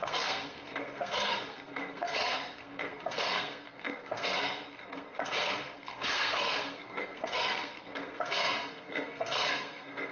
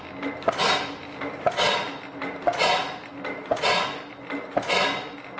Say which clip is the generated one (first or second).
first